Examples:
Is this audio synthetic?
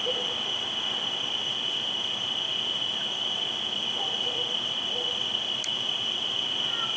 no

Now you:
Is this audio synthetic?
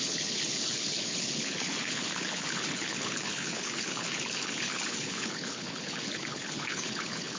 yes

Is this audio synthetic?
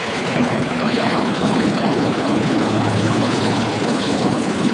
yes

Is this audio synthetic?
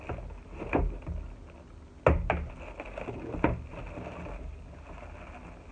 no